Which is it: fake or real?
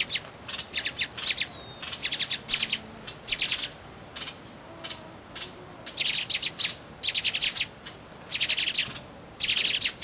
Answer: real